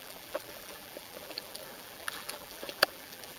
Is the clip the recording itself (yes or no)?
no